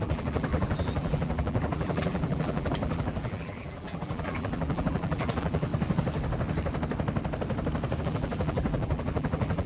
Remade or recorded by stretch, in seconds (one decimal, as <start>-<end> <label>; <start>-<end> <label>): 0.0-5.7 remade; 5.7-8.0 recorded; 8.0-9.7 remade

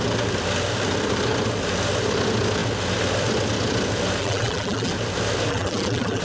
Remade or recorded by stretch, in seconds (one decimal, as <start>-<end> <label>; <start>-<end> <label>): 0.0-4.2 recorded; 4.2-4.9 remade; 4.9-5.5 recorded; 5.5-6.2 remade